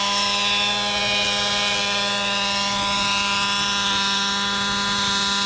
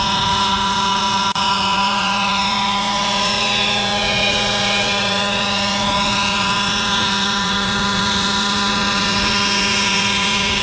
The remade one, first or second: second